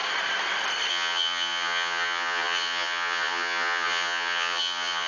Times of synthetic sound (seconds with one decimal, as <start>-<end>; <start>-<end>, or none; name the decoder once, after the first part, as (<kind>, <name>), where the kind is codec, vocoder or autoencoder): 0.9-5.1 (vocoder, HiFi-GAN)